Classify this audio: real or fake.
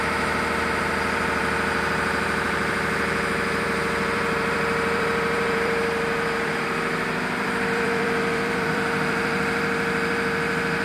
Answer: fake